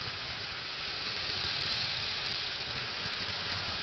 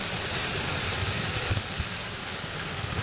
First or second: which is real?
second